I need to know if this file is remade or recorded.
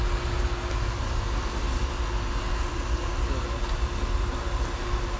recorded